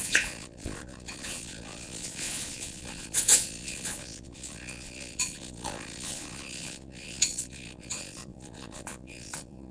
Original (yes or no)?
no